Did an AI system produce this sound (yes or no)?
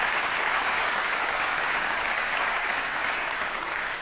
yes